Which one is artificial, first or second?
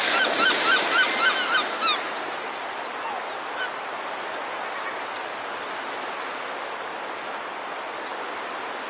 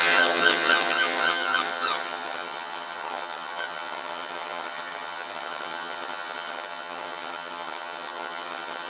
second